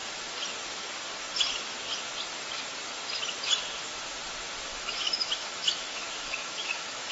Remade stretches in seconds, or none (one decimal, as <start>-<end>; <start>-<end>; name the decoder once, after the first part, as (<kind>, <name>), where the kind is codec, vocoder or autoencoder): 4.7-7.1 (autoencoder, DAC-VAE)